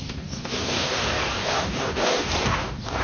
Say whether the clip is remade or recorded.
remade